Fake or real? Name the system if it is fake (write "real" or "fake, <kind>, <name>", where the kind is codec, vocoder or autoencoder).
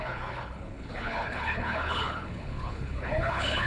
fake, codec, HILCodec